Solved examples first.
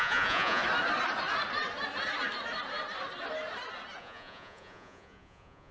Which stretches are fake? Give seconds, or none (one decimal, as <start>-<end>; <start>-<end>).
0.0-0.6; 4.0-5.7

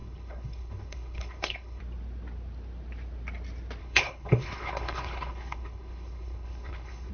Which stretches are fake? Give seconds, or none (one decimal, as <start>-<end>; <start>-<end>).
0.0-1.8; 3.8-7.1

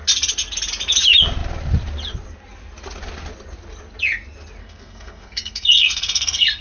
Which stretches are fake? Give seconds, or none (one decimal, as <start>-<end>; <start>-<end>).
4.6-6.6

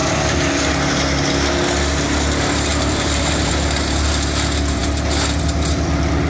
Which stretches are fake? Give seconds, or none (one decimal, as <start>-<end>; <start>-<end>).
0.0-0.7; 2.7-3.5